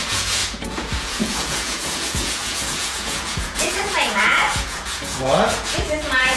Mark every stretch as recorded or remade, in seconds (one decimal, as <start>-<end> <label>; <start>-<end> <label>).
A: 0.0-6.4 remade

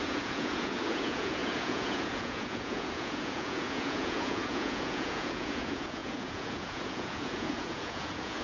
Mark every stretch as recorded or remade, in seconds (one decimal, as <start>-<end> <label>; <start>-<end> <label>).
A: 0.0-8.4 remade

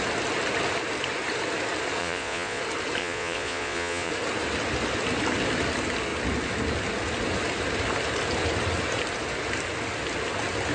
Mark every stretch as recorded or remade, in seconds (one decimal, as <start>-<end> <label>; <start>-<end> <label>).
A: 0.0-2.0 recorded; 2.0-2.6 remade; 2.6-3.0 recorded; 3.0-4.1 remade; 4.1-10.7 recorded